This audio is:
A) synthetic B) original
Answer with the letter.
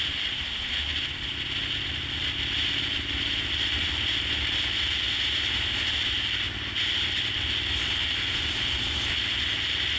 B